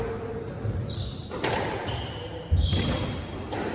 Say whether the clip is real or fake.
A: real